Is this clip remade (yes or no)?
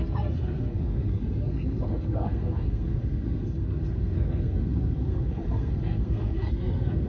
yes